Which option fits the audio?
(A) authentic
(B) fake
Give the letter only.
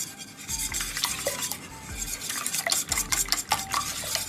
A